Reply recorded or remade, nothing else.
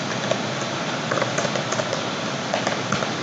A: recorded